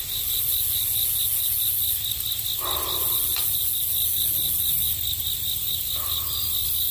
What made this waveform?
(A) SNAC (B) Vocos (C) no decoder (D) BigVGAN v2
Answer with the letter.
C